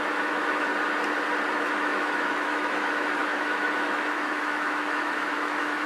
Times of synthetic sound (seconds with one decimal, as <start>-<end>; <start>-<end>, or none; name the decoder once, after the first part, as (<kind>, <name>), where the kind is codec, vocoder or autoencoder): 0.0-0.7 (autoencoder, DAC-VAE); 1.5-5.9